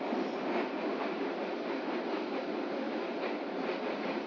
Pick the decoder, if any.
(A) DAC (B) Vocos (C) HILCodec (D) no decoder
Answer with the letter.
D